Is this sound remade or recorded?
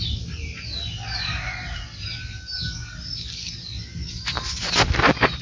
recorded